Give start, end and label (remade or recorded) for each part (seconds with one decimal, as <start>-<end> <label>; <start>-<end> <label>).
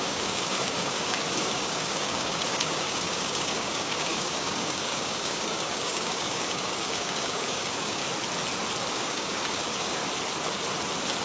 0.0-8.0 remade; 8.0-8.9 recorded; 8.9-10.0 remade; 10.0-11.2 recorded